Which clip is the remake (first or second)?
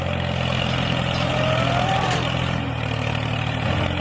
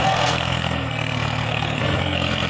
second